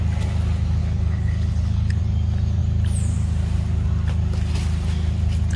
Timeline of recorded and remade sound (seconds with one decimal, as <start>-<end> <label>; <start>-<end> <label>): 0.0-0.8 recorded; 0.8-2.0 remade; 2.0-5.6 recorded